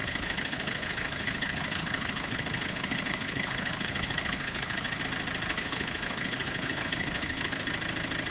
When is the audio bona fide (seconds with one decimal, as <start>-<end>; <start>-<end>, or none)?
5.0-5.5; 7.7-8.3